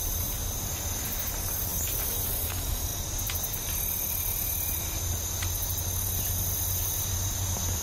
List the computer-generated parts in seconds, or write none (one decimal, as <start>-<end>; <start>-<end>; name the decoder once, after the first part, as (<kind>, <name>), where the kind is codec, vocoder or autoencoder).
none